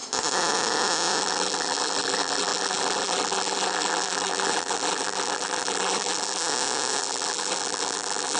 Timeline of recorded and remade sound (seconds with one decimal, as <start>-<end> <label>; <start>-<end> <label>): 0.0-1.2 recorded; 1.2-6.4 remade; 6.4-7.0 recorded; 7.0-8.4 remade